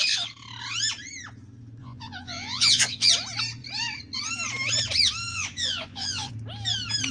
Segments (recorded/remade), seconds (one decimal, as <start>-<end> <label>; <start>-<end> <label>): 0.0-1.8 recorded; 1.8-3.1 remade; 3.1-5.3 recorded; 5.3-6.3 remade; 6.3-7.1 recorded